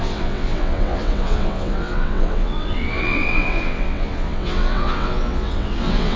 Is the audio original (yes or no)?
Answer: no